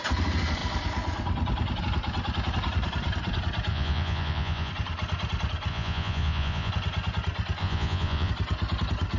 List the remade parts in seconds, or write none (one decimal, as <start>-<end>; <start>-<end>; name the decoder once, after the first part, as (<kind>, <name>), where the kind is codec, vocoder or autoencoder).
3.7-4.7 (vocoder, Vocos); 5.7-6.7; 7.6-8.3